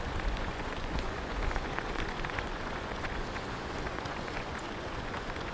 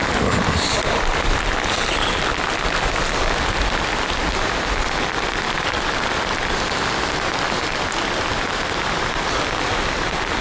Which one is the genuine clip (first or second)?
second